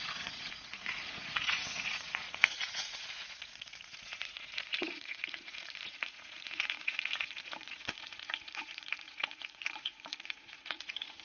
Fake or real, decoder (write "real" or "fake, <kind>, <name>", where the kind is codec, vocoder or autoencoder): fake, vocoder, Vocos